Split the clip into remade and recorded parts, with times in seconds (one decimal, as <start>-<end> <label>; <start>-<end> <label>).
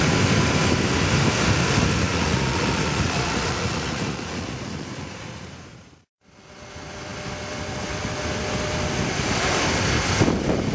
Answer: 0.0-2.1 recorded; 2.1-5.9 remade; 5.9-10.7 recorded